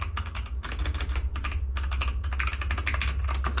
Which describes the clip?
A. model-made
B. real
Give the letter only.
B